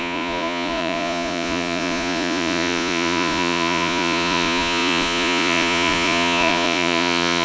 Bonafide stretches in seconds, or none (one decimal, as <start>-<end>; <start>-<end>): none